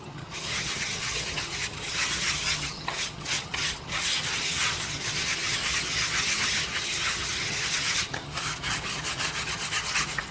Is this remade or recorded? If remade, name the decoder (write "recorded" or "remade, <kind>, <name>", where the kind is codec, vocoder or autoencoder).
remade, vocoder, HiFi-GAN